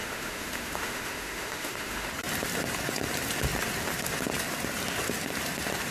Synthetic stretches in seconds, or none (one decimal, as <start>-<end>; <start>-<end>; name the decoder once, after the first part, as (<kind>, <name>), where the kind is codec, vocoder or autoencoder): 0.0-2.1 (autoencoder, DAC-VAE)